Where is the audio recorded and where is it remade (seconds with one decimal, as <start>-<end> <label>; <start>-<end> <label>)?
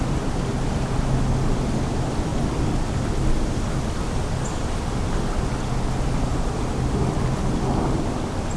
0.0-8.6 recorded